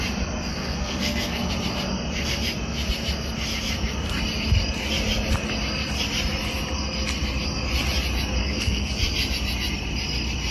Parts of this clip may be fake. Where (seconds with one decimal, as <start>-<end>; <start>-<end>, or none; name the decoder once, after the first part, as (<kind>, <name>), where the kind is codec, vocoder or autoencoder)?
0.5-1.5 (codec, SNAC); 8.4-8.9